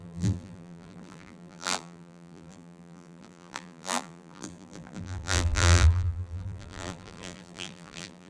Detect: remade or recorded remade